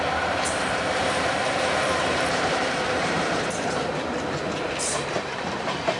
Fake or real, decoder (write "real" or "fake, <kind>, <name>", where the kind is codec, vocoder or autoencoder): fake, vocoder, BigVGAN v2